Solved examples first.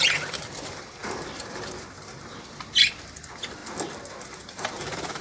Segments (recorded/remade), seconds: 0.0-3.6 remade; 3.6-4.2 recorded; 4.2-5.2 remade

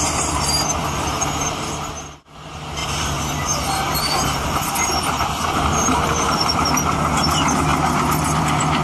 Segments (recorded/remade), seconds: 0.0-0.8 recorded; 0.8-1.5 remade; 1.5-2.8 recorded; 2.8-6.5 remade; 6.5-8.8 recorded

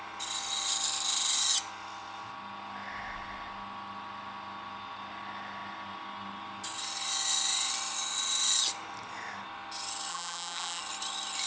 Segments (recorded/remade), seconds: 0.0-10.1 recorded; 10.1-10.8 remade; 10.8-11.5 recorded

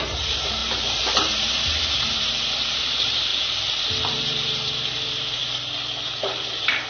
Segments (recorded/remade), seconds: 0.0-3.3 remade; 3.3-3.9 recorded; 3.9-5.4 remade; 5.4-6.5 recorded; 6.5-6.9 remade